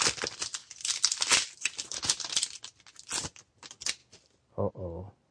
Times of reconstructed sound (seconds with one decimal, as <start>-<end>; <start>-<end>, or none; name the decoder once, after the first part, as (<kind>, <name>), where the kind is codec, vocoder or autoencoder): none